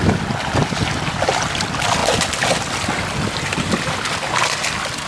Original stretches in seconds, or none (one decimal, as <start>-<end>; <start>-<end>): 0.0-5.1